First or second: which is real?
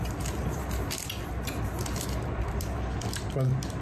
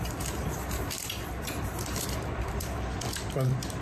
first